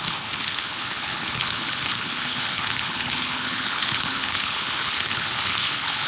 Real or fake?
fake